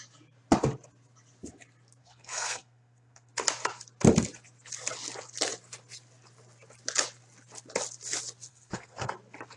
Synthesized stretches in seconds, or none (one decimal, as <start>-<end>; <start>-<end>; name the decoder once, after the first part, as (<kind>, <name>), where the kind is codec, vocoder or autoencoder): 2.0-3.3 (codec, SNAC); 8.5-9.1